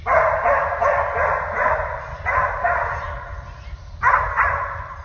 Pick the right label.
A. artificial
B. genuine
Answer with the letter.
B